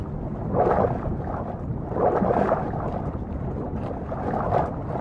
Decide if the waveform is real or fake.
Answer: real